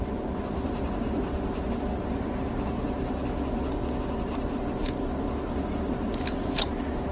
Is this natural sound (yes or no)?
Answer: yes